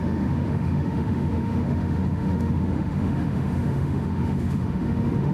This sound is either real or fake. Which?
fake